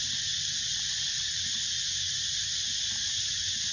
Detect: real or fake real